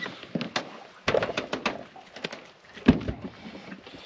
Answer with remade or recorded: recorded